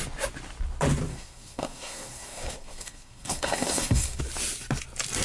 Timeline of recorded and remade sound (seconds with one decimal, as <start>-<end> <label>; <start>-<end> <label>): 0.0-1.1 recorded; 1.1-4.2 remade; 4.2-5.2 recorded